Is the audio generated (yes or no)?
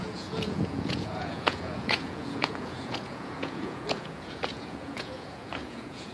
yes